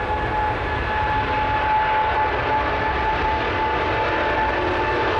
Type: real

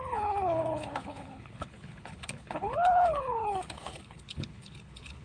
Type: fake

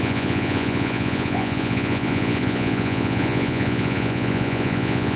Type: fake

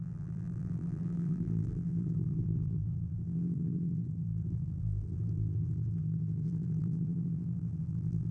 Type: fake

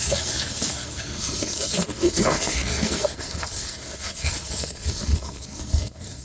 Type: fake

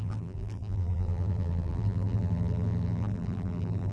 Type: fake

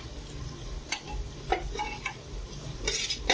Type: real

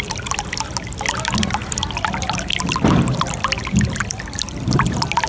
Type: real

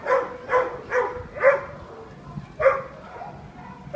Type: real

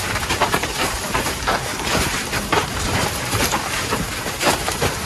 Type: fake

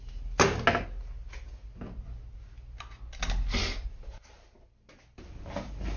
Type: real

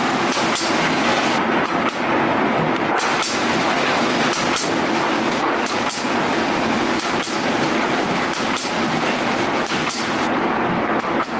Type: real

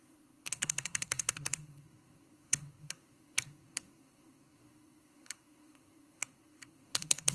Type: fake